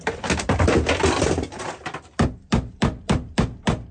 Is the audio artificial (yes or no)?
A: yes